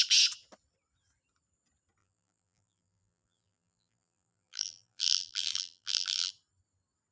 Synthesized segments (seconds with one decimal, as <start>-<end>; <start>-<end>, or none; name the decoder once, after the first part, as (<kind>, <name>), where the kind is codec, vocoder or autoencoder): 2.0-6.3 (vocoder, BigVGAN v2)

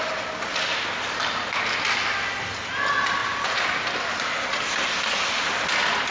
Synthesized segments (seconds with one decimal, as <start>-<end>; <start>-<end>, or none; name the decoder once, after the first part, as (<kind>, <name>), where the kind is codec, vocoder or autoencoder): 3.2-4.2 (vocoder, BigVGAN v2)

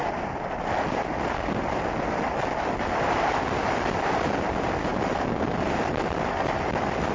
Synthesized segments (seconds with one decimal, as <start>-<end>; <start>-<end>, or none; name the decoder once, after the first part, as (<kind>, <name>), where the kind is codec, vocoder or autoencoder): 2.9-7.1 (vocoder, BigVGAN v2)

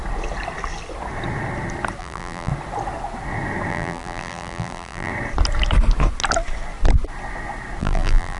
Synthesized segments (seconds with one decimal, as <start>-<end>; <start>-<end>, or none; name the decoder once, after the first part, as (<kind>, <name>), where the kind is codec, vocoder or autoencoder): 2.0-2.5 (vocoder, BigVGAN v2); 3.7-5.1; 7.8-8.4